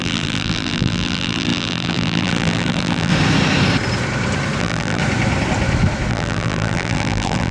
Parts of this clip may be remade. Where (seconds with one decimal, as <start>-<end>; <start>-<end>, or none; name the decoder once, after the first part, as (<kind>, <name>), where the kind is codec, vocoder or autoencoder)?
0.0-3.1 (vocoder, BigVGAN v2); 4.6-5.0; 6.1-7.5

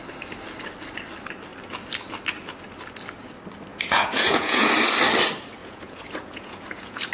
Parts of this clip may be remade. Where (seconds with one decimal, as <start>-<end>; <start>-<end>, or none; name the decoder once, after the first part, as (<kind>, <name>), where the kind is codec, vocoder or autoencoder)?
3.7-4.7 (vocoder, Vocos); 5.6-7.1